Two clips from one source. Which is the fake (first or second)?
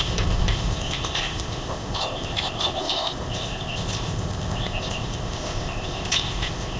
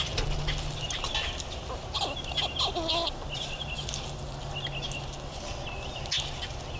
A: first